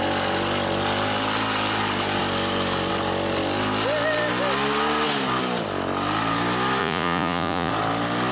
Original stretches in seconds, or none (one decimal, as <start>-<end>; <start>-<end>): 0.0-6.8; 7.7-8.3

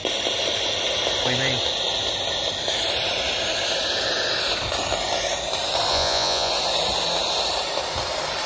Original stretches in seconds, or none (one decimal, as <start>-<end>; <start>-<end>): 0.0-5.9; 6.5-8.5

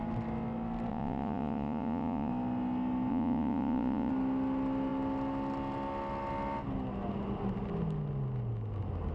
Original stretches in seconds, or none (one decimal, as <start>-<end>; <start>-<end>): 0.0-0.9; 2.3-3.1; 4.1-9.1

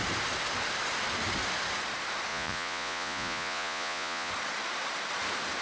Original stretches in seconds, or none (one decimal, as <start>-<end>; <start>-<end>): 0.0-2.3; 4.3-5.6

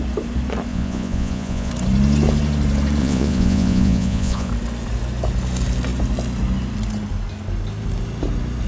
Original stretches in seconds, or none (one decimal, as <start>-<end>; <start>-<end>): 0.0-0.7; 1.7-3.0; 4.5-8.7